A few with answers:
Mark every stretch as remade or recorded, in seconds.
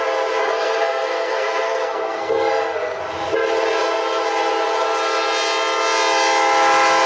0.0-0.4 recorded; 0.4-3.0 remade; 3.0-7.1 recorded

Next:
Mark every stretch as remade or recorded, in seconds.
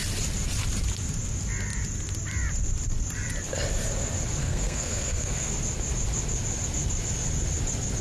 0.0-4.4 recorded; 4.4-5.5 remade; 5.5-8.0 recorded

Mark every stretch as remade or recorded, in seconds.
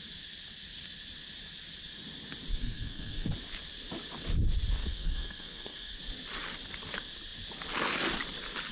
0.0-2.5 recorded; 2.5-3.3 remade; 3.3-4.8 recorded; 4.8-6.0 remade; 6.0-8.7 recorded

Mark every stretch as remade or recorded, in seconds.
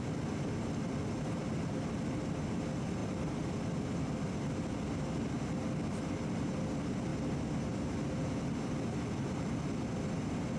0.0-10.6 recorded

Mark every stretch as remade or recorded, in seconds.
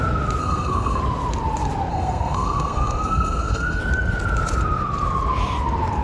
0.0-0.4 recorded; 0.4-1.0 remade; 1.0-1.9 recorded; 1.9-3.8 remade; 3.8-6.0 recorded